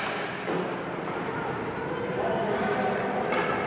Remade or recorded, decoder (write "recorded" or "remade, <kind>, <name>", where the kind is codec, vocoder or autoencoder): recorded